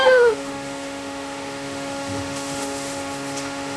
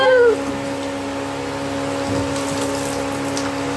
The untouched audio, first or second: second